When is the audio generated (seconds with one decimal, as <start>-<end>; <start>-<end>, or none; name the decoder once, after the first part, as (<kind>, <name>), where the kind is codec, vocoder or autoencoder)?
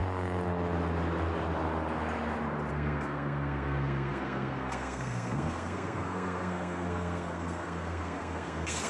2.7-8.9 (codec, SNAC)